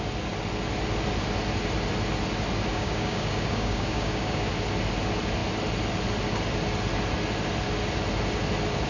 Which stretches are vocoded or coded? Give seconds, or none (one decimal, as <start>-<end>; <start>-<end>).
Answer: 2.7-4.5